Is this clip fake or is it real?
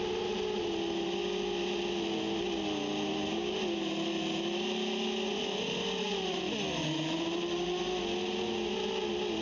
real